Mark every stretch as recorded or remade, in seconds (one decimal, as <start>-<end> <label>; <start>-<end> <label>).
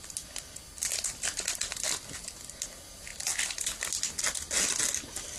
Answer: 0.0-5.4 recorded